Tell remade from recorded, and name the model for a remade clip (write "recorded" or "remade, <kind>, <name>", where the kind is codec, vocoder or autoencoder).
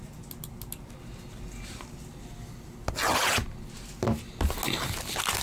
recorded